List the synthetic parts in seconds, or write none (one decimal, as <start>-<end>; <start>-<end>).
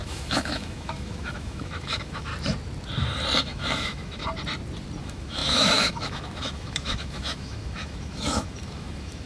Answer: 0.0-2.3; 3.4-4.2; 5.0-9.3